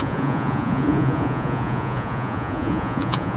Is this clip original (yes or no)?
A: no